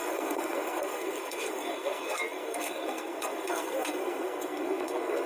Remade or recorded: remade